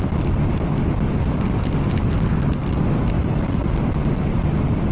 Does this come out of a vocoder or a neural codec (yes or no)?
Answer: no